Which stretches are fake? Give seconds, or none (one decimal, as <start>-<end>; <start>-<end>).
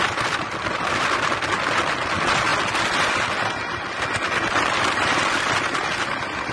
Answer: none